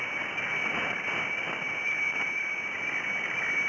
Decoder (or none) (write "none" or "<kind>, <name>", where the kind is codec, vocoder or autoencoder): none